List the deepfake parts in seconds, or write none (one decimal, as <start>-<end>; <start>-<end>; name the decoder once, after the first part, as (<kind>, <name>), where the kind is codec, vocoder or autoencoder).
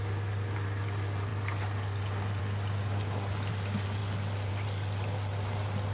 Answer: none